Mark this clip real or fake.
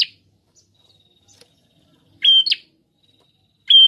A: real